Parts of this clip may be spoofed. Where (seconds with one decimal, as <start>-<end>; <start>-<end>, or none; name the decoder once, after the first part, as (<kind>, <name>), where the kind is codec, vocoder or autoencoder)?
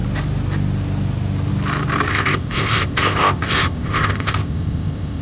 2.1-5.2 (codec, ZipCodec)